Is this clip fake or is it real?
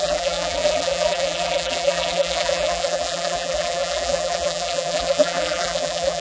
fake